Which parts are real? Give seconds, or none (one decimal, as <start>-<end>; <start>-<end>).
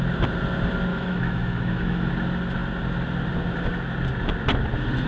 0.0-0.9; 2.1-5.1